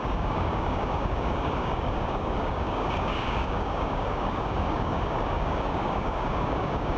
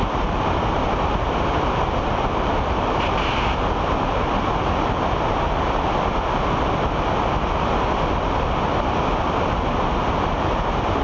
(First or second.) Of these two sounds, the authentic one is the second